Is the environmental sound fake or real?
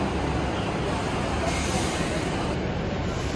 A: real